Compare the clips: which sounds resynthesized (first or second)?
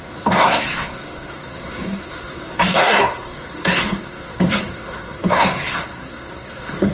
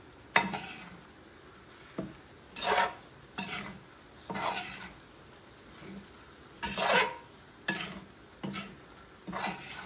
first